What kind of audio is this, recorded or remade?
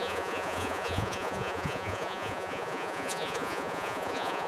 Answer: remade